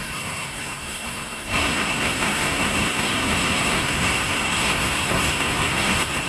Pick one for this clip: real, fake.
fake